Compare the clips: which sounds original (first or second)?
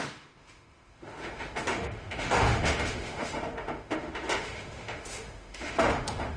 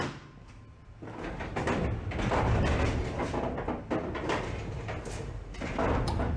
second